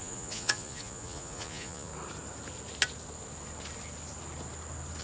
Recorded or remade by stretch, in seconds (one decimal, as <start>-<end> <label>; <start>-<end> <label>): 0.0-1.9 remade; 1.9-5.0 recorded